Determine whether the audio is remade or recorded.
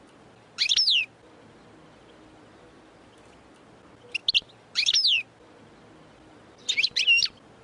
recorded